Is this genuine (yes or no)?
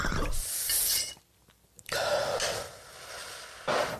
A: yes